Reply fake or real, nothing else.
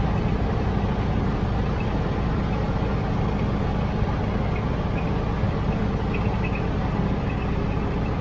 real